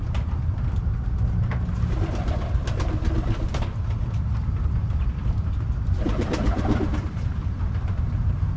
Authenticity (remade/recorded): recorded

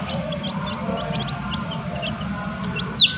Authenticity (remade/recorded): recorded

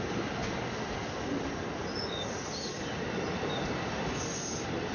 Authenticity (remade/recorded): recorded